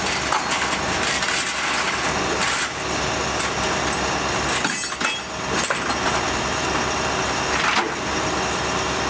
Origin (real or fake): real